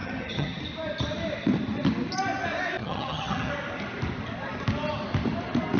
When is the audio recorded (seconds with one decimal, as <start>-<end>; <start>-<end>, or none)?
0.6-2.8; 3.5-5.8